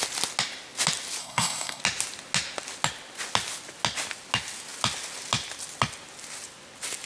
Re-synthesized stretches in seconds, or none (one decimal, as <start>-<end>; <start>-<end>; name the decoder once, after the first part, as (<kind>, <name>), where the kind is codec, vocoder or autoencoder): 1.2-1.8 (codec, SNAC)